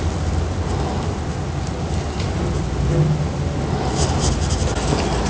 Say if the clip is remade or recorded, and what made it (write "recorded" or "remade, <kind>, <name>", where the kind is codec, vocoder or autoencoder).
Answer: recorded